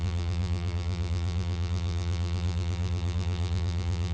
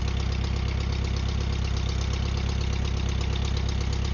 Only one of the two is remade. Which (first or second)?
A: first